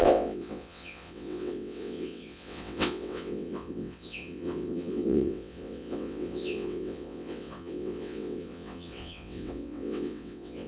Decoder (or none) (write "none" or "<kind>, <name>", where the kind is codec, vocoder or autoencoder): vocoder, WaveNeXt